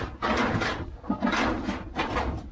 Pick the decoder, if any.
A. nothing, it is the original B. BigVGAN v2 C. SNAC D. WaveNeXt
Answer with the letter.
A